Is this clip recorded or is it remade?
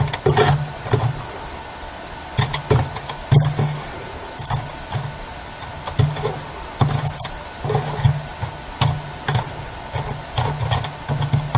recorded